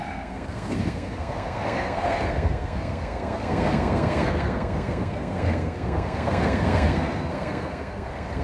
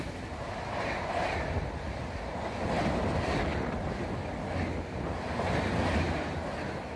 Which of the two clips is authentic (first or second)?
second